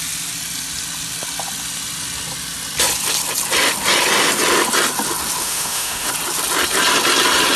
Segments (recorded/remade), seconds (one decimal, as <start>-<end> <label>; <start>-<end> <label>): 0.0-5.4 recorded; 5.4-6.1 remade; 6.1-7.6 recorded